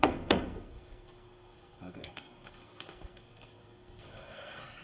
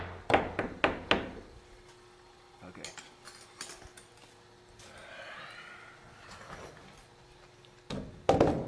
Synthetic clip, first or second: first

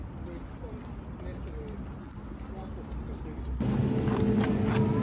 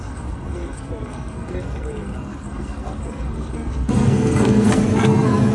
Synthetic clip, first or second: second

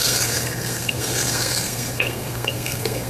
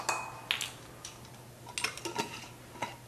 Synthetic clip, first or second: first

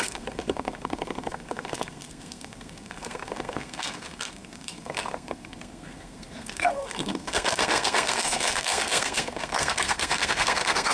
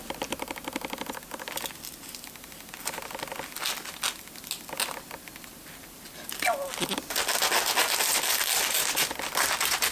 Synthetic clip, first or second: first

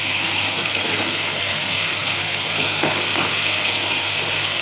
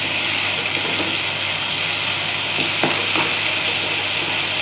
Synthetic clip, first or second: first